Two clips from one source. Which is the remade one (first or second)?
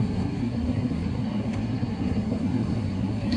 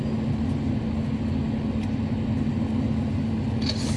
first